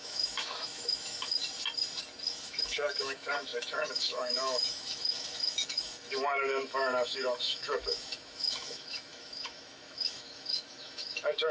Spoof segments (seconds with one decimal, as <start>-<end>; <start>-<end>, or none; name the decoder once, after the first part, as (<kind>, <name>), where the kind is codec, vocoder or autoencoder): 0.0-1.4 (autoencoder, DAC-VAE); 2.4-11.5